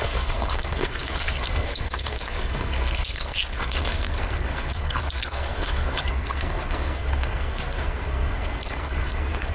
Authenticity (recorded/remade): remade